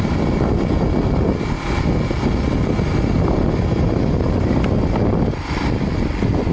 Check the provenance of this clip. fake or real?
real